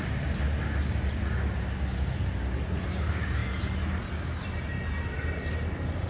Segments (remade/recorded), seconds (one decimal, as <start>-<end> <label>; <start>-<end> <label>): 0.0-6.1 recorded

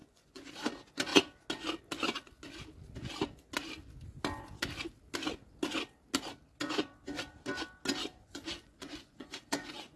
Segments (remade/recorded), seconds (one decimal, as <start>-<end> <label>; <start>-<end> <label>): 0.0-0.7 remade; 0.7-8.0 recorded; 8.0-10.0 remade

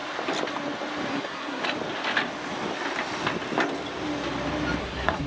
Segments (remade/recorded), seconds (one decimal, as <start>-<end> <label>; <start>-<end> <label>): 0.0-1.1 recorded; 1.1-1.6 remade; 1.6-4.8 recorded; 4.8-5.3 remade

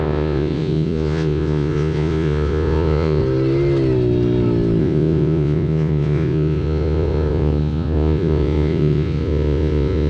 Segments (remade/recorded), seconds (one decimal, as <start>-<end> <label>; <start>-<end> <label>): 0.0-3.2 remade; 3.2-4.8 recorded; 4.8-10.1 remade